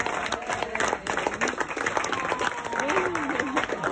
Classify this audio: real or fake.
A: real